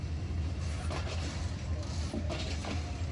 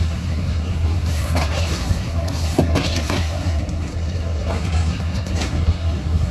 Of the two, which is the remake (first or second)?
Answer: second